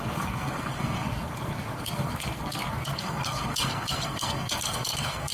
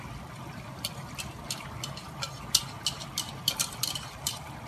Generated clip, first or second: first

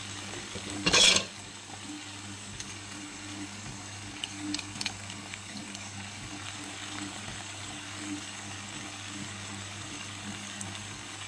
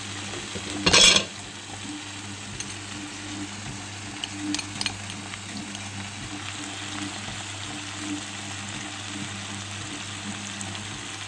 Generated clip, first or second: first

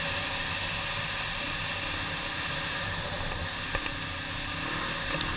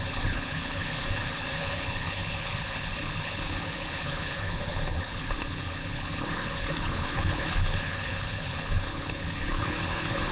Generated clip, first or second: second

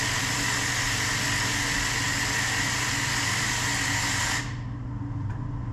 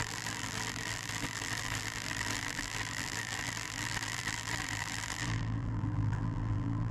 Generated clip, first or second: second